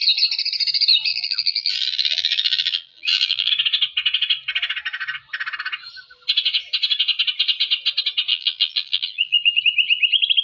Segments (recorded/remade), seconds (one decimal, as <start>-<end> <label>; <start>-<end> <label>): 0.0-1.1 recorded; 1.1-3.5 remade; 3.5-8.3 recorded; 8.3-9.6 remade; 9.6-10.4 recorded